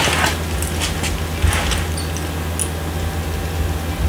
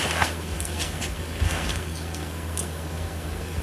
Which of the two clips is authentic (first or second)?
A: first